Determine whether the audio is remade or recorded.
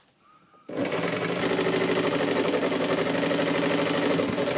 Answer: recorded